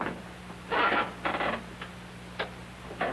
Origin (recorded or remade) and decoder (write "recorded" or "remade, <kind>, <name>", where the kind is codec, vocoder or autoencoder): recorded